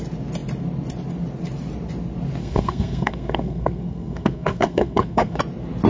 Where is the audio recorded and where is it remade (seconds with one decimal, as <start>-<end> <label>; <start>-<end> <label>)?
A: 0.0-2.4 recorded; 2.4-5.4 remade; 5.4-5.9 recorded